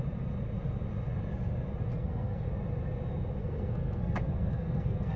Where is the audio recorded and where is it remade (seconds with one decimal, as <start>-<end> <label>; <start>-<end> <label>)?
0.0-1.9 recorded; 1.9-2.5 remade; 2.5-3.4 recorded; 3.4-5.2 remade